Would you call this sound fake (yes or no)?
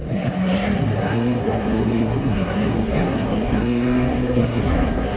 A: yes